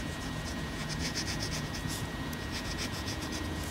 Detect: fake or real fake